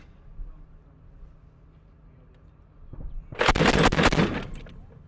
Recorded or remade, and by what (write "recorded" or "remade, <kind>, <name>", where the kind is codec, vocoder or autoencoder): recorded